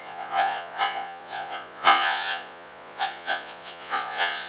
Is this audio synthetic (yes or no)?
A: yes